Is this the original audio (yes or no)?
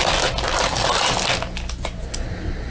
yes